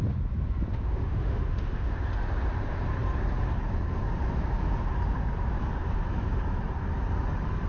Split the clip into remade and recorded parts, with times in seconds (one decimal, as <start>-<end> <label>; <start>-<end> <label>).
0.0-0.7 recorded; 0.7-2.0 remade; 2.0-7.7 recorded